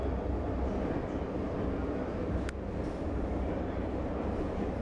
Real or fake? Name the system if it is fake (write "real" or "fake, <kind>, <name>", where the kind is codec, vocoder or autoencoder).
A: real